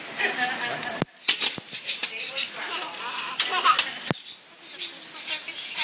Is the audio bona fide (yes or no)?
yes